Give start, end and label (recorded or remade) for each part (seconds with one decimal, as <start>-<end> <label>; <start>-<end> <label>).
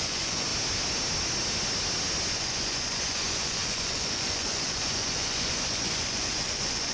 0.0-0.5 remade; 0.5-2.3 recorded; 2.3-6.9 remade